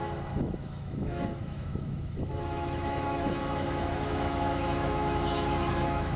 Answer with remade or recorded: remade